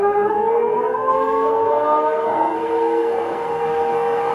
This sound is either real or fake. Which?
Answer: fake